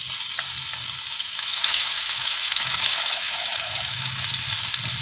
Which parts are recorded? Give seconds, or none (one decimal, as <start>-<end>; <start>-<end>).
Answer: 0.0-1.1; 4.1-5.0